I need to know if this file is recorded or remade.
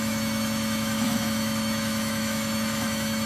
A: remade